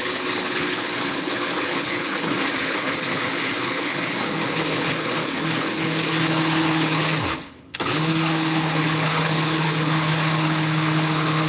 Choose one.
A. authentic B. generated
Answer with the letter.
B